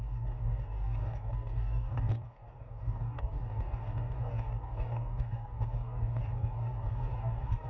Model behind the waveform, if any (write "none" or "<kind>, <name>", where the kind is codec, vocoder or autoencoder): codec, DAC